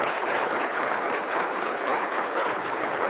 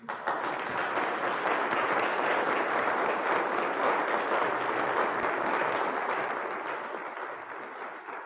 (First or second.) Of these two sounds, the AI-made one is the first